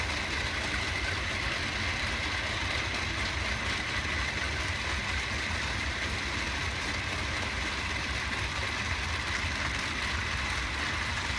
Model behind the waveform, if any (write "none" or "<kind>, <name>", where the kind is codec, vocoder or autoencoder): none